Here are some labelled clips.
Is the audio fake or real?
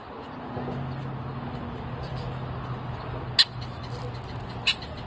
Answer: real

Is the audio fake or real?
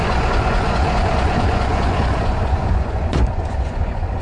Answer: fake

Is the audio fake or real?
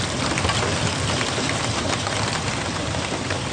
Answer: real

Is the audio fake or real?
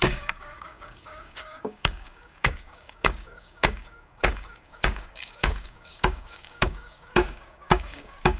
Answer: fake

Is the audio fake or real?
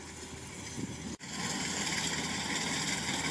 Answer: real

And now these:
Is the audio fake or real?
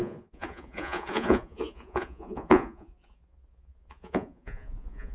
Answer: fake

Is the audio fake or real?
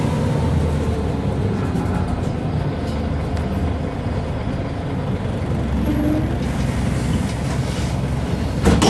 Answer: real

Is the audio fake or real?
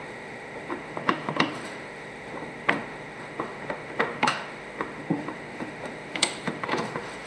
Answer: fake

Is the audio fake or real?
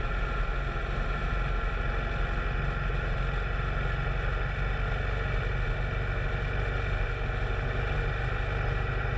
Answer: real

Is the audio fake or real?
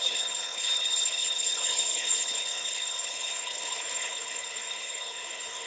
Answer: fake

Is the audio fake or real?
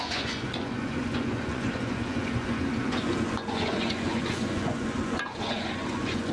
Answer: fake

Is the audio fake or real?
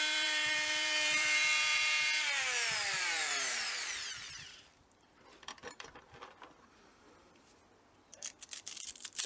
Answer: fake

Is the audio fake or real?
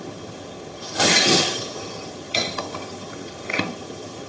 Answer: fake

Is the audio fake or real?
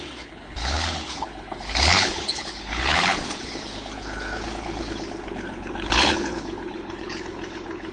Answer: fake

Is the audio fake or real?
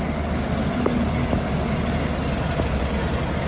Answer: real